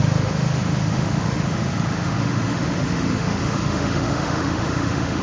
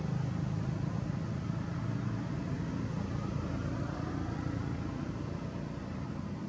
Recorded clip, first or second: second